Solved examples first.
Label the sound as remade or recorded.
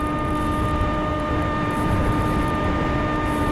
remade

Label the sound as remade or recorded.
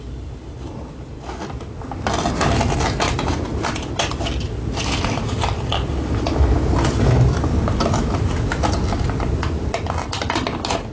recorded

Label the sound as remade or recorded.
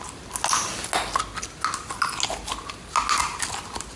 recorded